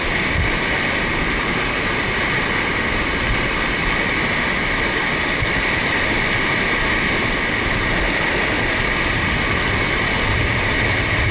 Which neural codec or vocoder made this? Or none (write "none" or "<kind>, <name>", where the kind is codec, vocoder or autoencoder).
none